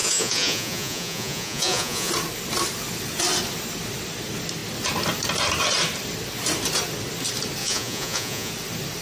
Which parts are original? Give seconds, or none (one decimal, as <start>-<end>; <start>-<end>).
2.1-7.6; 8.5-9.0